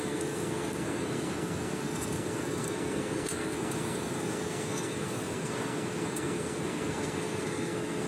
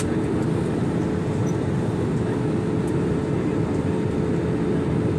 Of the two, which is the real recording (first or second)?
second